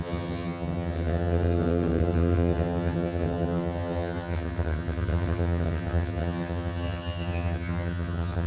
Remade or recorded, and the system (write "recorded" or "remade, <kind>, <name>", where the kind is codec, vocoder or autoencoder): remade, vocoder, HiFi-GAN